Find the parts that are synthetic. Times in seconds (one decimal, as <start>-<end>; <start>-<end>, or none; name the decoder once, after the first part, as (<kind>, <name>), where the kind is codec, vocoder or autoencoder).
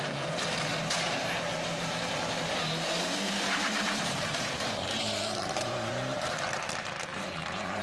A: 1.7-5.9 (vocoder, BigVGAN v2); 7.1-7.8